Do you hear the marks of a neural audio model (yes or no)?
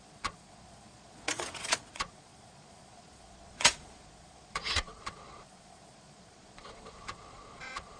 yes